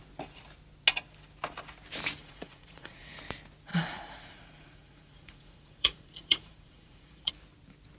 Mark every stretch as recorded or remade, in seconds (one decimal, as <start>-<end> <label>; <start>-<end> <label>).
0.0-2.2 recorded; 2.2-3.2 remade; 3.2-3.7 recorded; 3.7-7.3 remade; 7.3-8.0 recorded